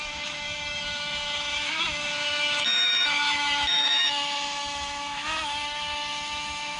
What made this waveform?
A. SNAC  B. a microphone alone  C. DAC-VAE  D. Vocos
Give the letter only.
C